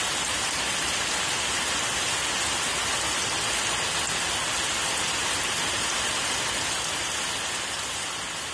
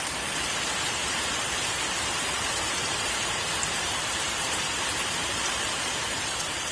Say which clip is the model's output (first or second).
second